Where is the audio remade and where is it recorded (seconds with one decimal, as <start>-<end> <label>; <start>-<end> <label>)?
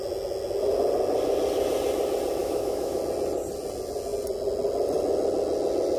0.0-2.4 recorded; 2.4-3.0 remade; 3.0-6.0 recorded